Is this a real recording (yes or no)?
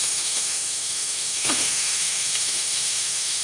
no